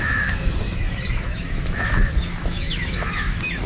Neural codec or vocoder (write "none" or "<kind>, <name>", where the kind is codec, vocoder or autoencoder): autoencoder, DAC-VAE